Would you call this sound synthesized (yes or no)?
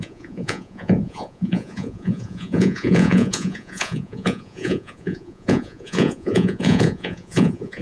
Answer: yes